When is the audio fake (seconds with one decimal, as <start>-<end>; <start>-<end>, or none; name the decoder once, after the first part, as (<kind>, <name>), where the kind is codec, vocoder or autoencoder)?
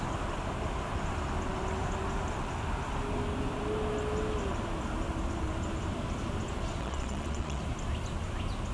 6.8-7.6 (vocoder, Vocos)